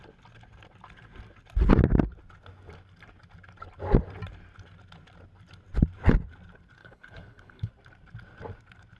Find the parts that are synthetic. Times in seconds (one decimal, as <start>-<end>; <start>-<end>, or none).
6.8-7.7